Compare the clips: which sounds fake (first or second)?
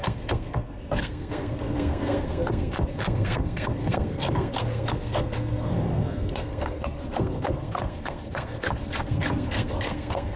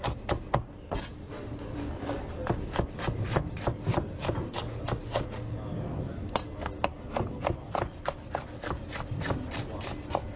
first